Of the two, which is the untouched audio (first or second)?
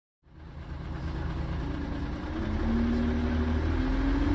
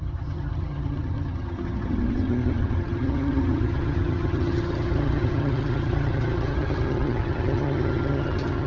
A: first